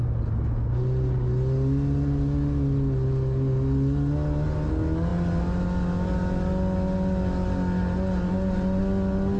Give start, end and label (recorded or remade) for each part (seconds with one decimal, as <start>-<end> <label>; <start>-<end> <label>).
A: 0.0-9.4 recorded